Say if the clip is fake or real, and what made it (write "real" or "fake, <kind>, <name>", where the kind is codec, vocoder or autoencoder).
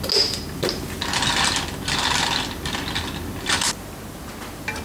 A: real